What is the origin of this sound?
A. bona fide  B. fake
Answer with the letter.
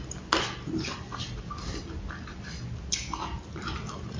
A